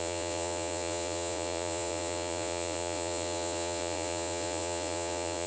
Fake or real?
fake